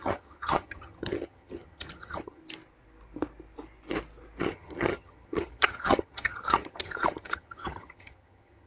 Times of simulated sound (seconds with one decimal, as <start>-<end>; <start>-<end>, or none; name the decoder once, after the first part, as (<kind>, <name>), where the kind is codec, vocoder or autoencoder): 0.0-2.4 (vocoder, HiFi-GAN); 4.4-8.7